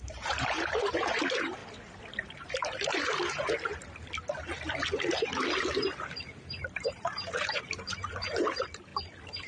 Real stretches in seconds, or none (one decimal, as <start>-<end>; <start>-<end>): 1.6-2.1; 3.7-5.6; 8.9-9.5